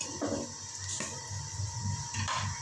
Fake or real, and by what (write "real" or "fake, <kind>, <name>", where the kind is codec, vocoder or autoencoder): fake, vocoder, BigVGAN v2